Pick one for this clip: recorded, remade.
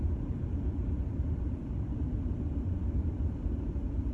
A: remade